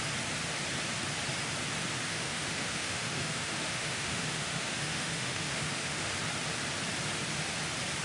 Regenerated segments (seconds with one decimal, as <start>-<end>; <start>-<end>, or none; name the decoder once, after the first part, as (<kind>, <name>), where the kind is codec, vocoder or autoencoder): 2.1-6.1 (autoencoder, DAC-VAE)